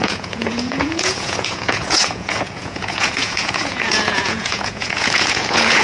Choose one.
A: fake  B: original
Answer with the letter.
A